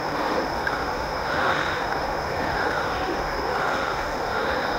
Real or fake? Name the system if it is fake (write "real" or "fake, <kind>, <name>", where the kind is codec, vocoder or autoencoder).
fake, autoencoder, DAC-VAE